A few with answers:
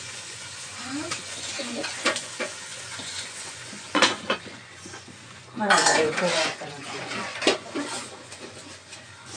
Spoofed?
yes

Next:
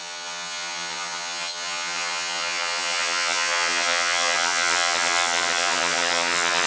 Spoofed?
yes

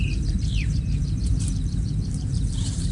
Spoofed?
yes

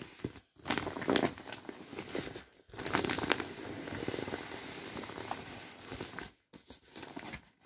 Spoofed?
no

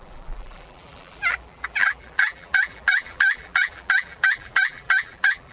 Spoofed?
yes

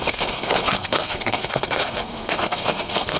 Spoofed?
yes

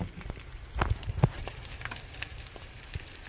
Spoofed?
yes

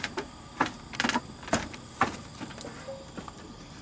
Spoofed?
no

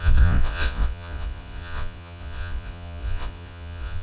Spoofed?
yes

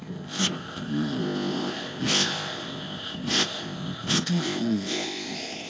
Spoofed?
yes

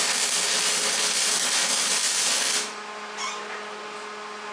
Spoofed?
no